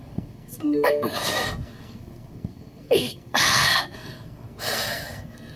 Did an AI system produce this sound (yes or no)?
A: yes